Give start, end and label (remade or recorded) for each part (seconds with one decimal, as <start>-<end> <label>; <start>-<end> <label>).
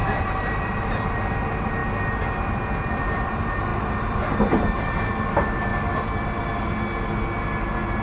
0.0-0.8 remade; 0.8-3.7 recorded; 3.7-5.1 remade; 5.1-5.7 recorded; 5.7-6.4 remade; 6.4-8.0 recorded